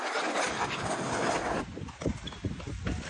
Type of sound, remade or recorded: recorded